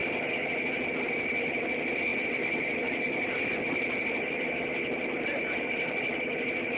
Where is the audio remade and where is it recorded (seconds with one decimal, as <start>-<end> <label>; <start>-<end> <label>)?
0.0-6.8 recorded